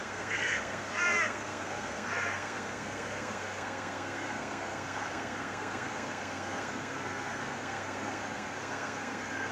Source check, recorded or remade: remade